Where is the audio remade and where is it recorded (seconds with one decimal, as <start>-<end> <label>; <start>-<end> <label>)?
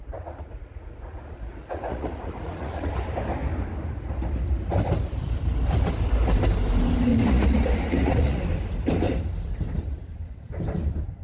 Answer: 0.0-2.9 remade; 2.9-7.1 recorded; 7.1-8.4 remade; 8.4-11.2 recorded